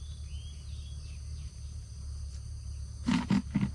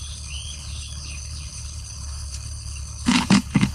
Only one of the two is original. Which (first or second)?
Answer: first